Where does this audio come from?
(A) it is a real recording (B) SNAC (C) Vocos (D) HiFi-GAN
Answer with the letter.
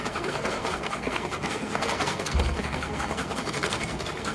B